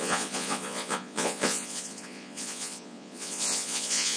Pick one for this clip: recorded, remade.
remade